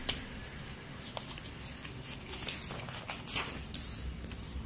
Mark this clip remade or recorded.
recorded